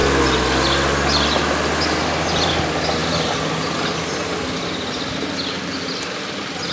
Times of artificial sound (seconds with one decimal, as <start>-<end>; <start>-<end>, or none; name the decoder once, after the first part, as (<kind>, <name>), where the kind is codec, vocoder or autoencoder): none